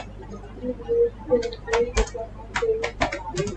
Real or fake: real